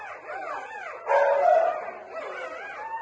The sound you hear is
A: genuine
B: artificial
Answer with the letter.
A